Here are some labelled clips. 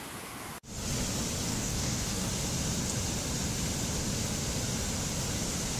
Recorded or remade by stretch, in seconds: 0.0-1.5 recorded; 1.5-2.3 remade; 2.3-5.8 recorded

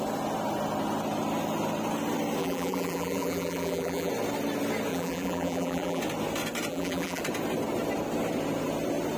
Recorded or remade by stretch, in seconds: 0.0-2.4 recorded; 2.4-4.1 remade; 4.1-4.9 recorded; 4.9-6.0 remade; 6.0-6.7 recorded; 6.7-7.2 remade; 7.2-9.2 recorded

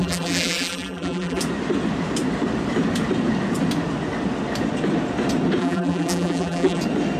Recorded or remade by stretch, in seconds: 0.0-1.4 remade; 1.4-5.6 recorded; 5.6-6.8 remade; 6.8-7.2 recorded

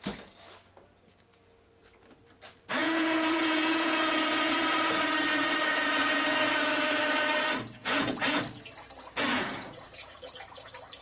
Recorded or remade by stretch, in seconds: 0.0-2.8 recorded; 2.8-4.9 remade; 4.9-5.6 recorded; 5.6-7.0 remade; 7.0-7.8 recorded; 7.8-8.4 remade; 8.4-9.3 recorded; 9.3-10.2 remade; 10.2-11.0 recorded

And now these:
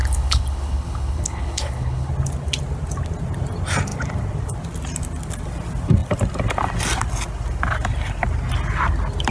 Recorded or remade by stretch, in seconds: 0.0-2.1 remade; 2.1-9.3 recorded

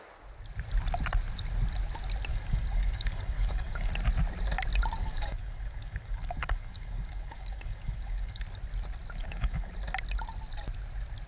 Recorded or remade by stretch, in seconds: 0.0-2.3 recorded; 2.3-3.9 remade; 3.9-5.0 recorded; 5.0-8.4 remade; 8.4-9.2 recorded; 9.2-9.7 remade; 9.7-11.3 recorded

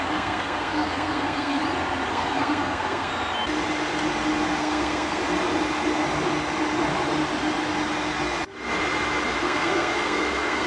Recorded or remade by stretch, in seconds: 0.0-1.6 remade; 1.6-2.1 recorded; 2.1-3.1 remade; 3.1-4.6 recorded; 4.6-5.2 remade; 5.2-9.4 recorded; 9.4-10.7 remade